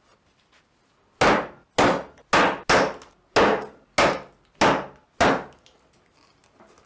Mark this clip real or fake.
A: real